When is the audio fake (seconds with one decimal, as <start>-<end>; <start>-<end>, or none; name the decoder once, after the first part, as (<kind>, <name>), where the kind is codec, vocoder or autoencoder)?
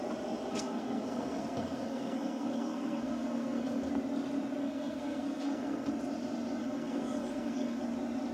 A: 0.5-3.9 (codec, SNAC); 4.6-5.9; 6.6-7.8